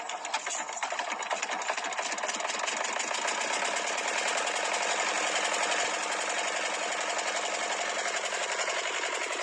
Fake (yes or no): no